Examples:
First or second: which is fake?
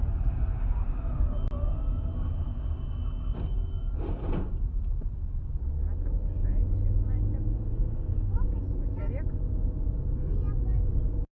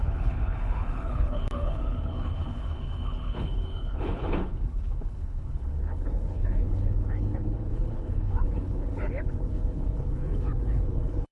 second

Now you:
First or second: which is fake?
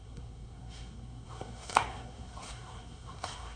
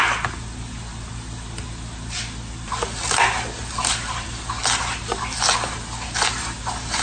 first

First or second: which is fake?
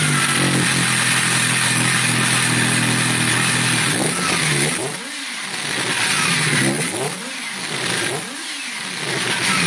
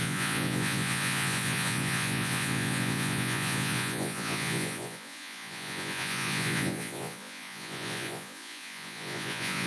second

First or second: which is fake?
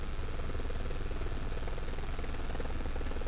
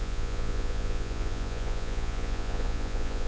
second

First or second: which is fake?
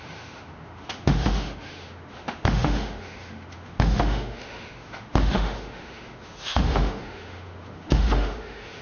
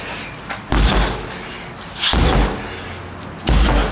first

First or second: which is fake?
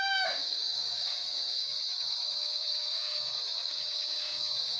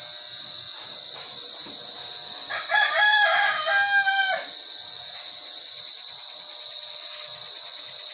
first